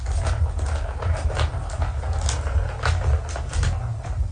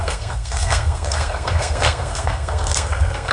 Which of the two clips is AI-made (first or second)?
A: second